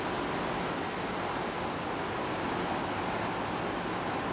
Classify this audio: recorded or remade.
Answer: recorded